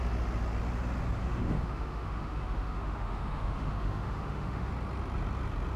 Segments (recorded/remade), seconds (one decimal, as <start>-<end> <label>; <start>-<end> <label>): 0.0-1.2 recorded; 1.2-4.7 remade; 4.7-5.8 recorded

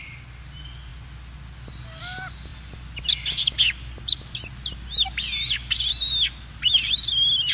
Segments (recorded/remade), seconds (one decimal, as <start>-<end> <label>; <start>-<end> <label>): 0.0-7.5 recorded

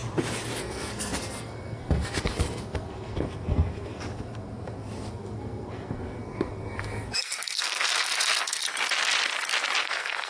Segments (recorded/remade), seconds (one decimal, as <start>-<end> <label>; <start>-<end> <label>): 0.0-0.6 recorded; 0.6-8.6 remade; 8.6-9.8 recorded; 9.8-10.3 remade